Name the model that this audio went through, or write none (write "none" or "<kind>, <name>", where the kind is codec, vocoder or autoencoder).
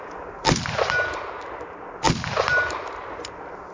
none